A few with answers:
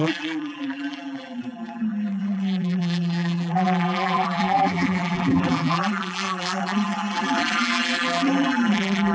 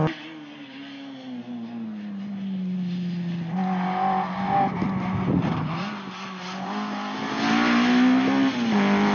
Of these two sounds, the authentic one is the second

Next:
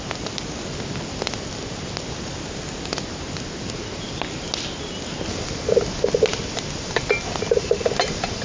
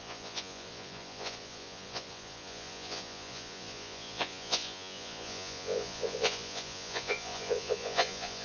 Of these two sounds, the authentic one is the first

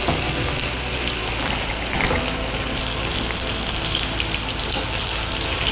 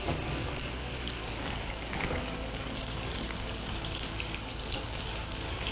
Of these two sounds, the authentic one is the first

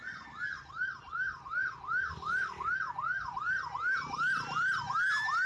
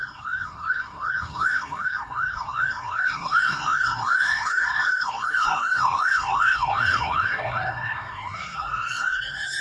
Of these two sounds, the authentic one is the first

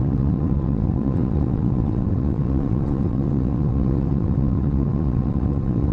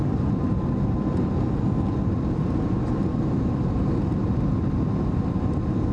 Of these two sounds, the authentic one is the second